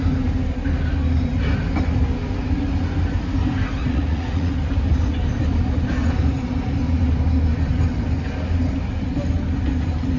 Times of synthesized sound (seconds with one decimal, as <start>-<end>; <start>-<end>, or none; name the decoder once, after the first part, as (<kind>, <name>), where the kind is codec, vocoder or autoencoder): 3.8-4.5 (vocoder, Vocos)